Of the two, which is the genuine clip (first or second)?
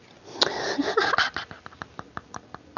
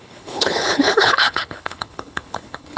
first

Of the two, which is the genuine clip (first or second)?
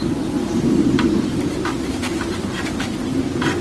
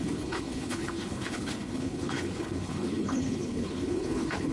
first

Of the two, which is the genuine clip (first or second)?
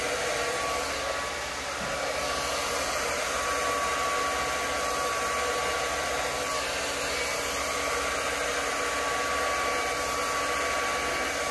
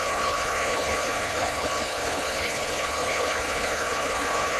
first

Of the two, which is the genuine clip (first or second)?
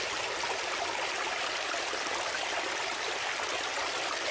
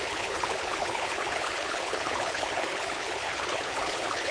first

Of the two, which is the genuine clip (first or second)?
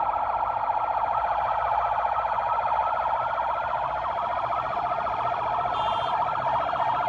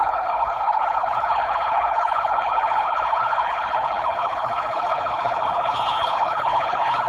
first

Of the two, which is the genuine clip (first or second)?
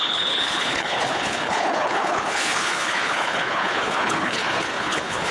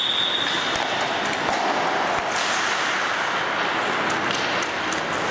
second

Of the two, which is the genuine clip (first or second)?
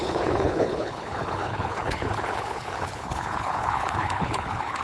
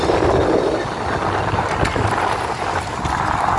second